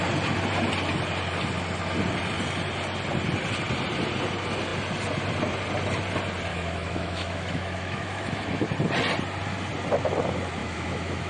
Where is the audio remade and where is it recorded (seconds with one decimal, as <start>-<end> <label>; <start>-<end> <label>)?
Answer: 0.0-6.5 recorded; 6.5-8.7 remade; 8.7-10.6 recorded; 10.6-11.3 remade